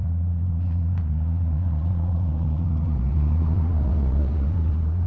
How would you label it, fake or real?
fake